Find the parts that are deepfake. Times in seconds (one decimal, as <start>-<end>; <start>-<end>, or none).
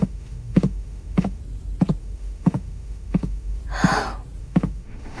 0.0-1.4; 2.0-3.6; 4.4-5.2